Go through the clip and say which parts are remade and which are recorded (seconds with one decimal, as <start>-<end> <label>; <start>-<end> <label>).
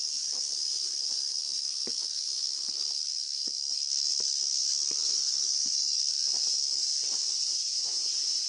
0.0-5.0 recorded; 5.0-6.0 remade; 6.0-8.5 recorded